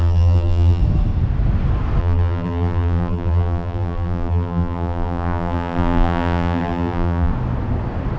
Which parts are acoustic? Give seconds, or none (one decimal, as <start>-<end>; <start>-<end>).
0.8-2.0; 7.3-8.2